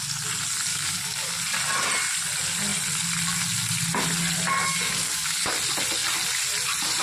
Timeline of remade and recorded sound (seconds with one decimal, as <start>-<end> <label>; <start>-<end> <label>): 0.0-0.7 recorded; 0.7-1.3 remade; 1.3-4.6 recorded; 4.6-5.5 remade; 5.5-7.0 recorded